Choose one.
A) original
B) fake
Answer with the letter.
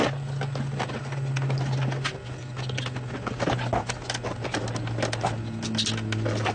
A